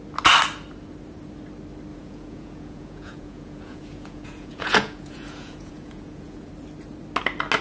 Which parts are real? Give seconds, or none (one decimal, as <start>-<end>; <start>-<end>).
0.0-1.9; 6.5-7.6